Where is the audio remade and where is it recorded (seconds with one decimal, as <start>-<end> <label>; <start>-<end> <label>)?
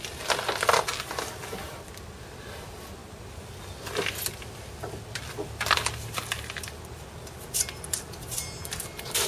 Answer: 0.0-9.3 recorded